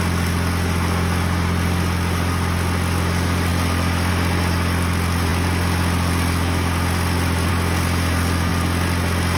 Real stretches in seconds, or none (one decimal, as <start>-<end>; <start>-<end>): 0.0-9.4